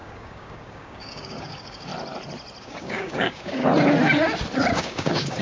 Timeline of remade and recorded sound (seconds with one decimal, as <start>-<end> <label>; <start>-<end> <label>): 0.0-1.9 remade; 1.9-2.6 recorded; 2.6-3.6 remade; 3.6-4.7 recorded; 4.7-5.4 remade